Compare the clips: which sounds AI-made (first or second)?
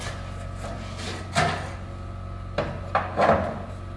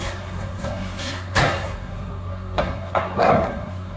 second